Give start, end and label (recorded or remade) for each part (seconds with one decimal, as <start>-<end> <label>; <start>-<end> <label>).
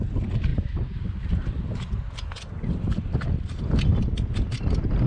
0.0-5.1 recorded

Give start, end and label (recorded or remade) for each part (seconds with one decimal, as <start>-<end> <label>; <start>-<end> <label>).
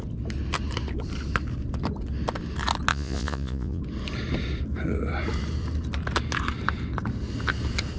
0.0-2.9 recorded; 2.9-3.8 remade; 3.8-8.0 recorded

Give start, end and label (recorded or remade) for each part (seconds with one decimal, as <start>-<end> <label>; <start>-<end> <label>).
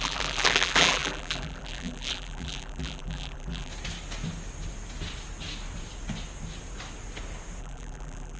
0.0-3.7 remade; 3.7-7.6 recorded; 7.6-8.4 remade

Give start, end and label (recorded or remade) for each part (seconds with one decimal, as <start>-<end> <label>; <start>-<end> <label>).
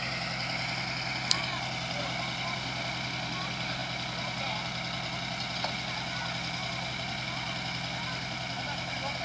0.0-9.2 recorded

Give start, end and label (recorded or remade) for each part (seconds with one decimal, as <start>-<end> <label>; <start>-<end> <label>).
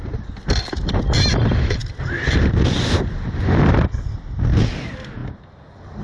0.0-6.0 recorded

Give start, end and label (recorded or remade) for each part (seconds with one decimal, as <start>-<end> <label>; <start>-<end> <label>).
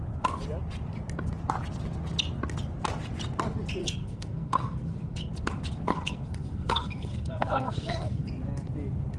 0.0-3.8 recorded; 3.8-5.3 remade; 5.3-5.9 recorded; 5.9-8.3 remade; 8.3-9.2 recorded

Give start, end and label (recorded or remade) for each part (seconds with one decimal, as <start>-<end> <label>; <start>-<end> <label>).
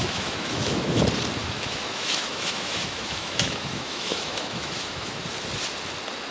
0.0-1.0 remade; 1.0-1.4 recorded; 1.4-5.2 remade; 5.2-6.3 recorded